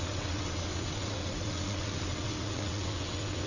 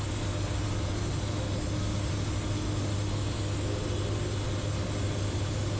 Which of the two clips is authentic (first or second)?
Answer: second